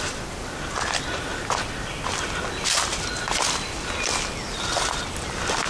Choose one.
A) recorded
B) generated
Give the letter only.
A